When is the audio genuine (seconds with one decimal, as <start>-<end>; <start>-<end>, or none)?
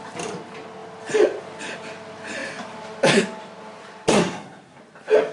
0.0-4.1; 4.8-5.3